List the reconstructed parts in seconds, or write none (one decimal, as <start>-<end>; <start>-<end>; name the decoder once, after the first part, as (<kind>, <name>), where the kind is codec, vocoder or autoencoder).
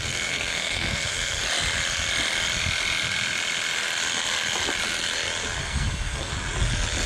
0.0-1.4 (codec, SNAC); 5.6-6.3